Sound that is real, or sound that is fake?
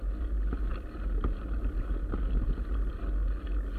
real